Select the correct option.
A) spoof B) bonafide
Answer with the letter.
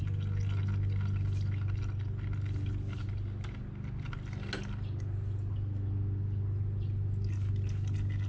B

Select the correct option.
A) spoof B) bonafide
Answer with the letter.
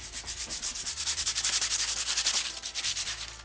A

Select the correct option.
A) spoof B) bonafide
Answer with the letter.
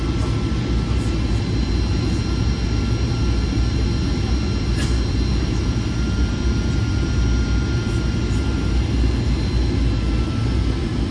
B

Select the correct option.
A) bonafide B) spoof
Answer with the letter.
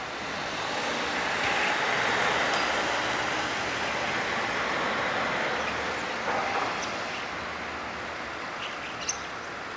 A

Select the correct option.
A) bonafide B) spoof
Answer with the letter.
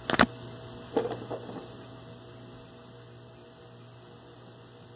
A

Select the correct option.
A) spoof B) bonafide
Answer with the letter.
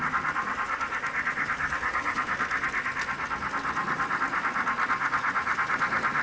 B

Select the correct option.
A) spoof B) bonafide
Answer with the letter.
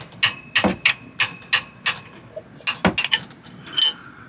B